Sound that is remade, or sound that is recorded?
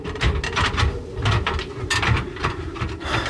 remade